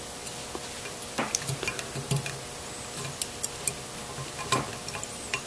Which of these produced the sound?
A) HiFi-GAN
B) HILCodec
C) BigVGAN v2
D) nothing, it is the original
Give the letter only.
D